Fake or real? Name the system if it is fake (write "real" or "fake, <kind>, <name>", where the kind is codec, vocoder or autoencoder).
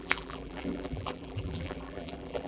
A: fake, vocoder, BigVGAN v2